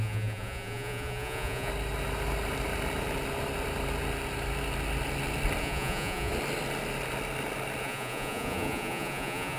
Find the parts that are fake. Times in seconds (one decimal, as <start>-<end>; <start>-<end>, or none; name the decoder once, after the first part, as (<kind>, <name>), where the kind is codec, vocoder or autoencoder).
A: 0.0-1.7 (vocoder, Vocos); 5.6-6.3; 7.8-9.6